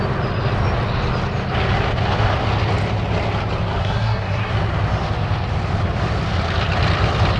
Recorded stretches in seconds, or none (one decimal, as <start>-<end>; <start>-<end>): 0.0-3.8; 4.5-7.4